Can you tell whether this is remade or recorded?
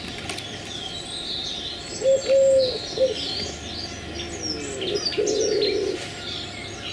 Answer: recorded